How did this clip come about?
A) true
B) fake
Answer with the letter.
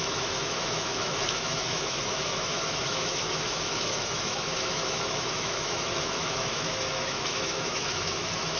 B